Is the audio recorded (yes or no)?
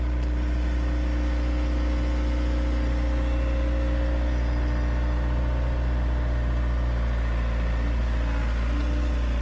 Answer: yes